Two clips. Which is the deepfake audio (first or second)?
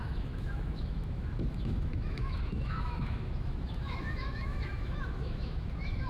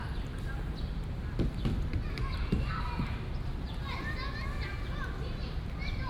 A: first